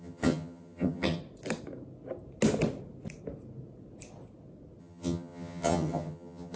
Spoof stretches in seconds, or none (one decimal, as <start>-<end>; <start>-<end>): 0.0-1.2; 4.8-6.6